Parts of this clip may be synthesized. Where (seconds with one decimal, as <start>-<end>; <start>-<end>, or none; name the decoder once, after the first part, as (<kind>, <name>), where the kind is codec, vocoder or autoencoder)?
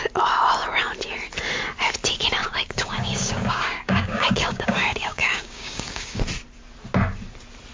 2.4-6.2 (codec, DAC)